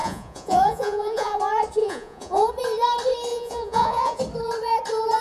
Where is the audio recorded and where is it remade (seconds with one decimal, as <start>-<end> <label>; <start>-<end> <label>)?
0.0-1.4 remade; 1.4-1.8 recorded; 1.8-2.5 remade; 2.5-3.3 recorded; 3.3-4.2 remade; 4.2-5.2 recorded